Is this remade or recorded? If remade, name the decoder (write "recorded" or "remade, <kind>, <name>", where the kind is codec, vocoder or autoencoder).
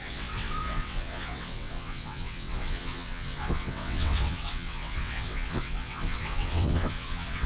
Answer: remade, vocoder, WaveNeXt